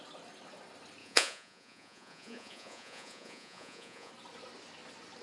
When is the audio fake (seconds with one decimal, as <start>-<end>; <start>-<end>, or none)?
1.0-4.1